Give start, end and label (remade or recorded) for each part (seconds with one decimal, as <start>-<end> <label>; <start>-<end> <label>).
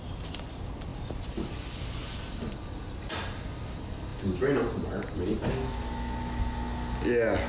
0.0-7.5 recorded